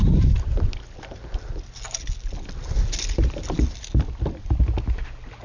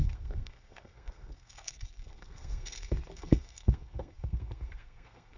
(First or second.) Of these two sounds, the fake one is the second